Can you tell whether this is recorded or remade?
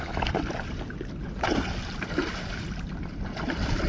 recorded